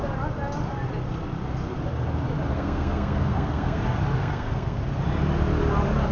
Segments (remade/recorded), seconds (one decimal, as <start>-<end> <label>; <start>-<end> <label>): 0.0-2.5 recorded; 2.5-3.8 remade; 3.8-4.2 recorded; 4.2-4.8 remade; 4.8-6.1 recorded

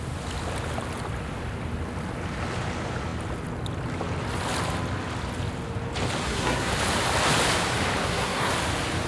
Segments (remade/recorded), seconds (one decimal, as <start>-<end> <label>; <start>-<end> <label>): 0.0-6.2 recorded; 6.2-6.7 remade; 6.7-8.0 recorded; 8.0-8.5 remade; 8.5-9.1 recorded

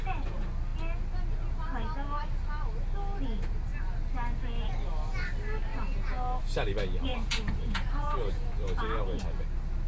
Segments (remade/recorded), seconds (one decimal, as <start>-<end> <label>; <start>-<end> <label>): 0.0-5.7 recorded; 5.7-6.4 remade; 6.4-7.1 recorded; 7.1-9.2 remade; 9.2-9.9 recorded

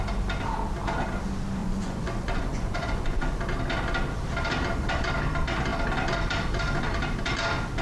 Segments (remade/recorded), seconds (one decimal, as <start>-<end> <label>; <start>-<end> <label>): 0.0-1.6 recorded; 1.6-3.4 remade; 3.4-7.8 recorded

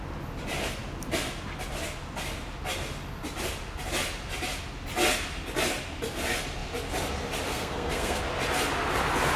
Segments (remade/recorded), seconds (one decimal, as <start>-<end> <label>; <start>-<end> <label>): 0.0-7.5 recorded; 7.5-8.2 remade; 8.2-9.4 recorded